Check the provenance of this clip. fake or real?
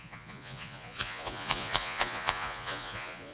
fake